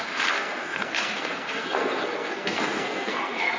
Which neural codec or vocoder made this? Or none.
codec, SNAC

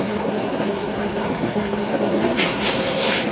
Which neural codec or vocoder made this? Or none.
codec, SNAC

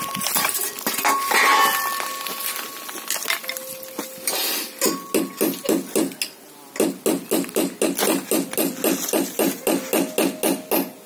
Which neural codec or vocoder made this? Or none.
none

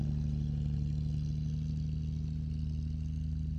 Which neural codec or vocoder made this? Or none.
none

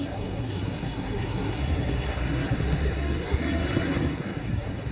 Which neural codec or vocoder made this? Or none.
codec, SNAC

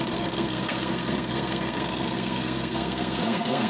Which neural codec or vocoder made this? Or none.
codec, SNAC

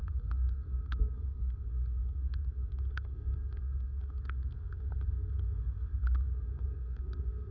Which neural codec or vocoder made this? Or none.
codec, SNAC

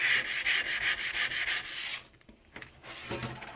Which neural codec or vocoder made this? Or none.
none